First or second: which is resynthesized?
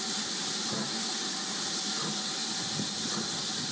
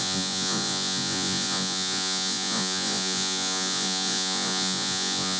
second